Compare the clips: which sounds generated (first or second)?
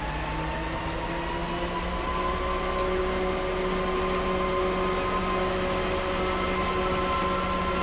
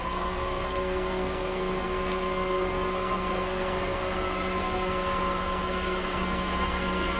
second